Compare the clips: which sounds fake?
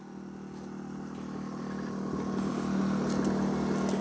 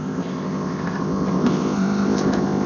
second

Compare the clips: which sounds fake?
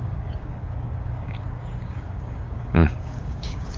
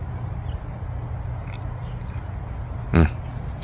first